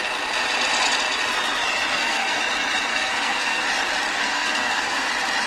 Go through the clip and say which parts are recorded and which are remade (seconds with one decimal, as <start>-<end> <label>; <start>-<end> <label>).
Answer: 0.0-1.9 recorded; 1.9-2.4 remade; 2.4-2.9 recorded; 2.9-3.6 remade; 3.6-4.1 recorded; 4.1-5.1 remade; 5.1-5.5 recorded

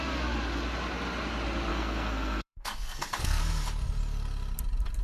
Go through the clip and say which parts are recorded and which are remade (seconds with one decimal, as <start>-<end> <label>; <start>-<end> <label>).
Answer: 0.0-1.7 recorded; 1.7-3.4 remade; 3.4-5.0 recorded

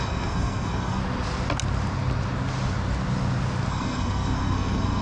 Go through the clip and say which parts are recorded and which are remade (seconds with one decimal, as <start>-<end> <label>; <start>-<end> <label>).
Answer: 0.0-1.0 remade; 1.0-3.7 recorded; 3.7-5.0 remade